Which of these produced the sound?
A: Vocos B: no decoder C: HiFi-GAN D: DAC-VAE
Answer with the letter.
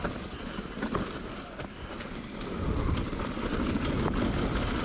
B